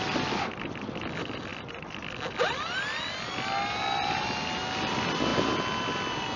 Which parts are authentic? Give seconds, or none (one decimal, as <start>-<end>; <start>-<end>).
0.0-6.4